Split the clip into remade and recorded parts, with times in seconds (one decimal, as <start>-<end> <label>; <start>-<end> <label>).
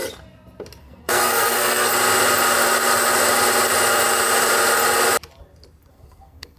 0.0-0.8 recorded; 0.8-1.9 remade; 1.9-5.9 recorded; 5.9-6.6 remade